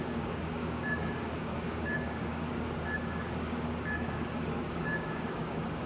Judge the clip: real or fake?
fake